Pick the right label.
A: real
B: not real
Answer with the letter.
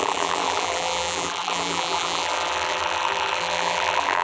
B